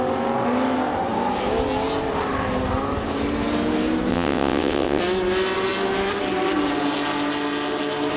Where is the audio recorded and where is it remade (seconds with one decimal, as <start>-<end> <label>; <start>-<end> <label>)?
0.0-4.1 recorded; 4.1-5.0 remade; 5.0-8.2 recorded